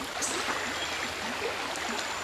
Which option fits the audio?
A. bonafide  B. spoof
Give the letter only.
A